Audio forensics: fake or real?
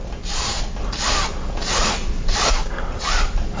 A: real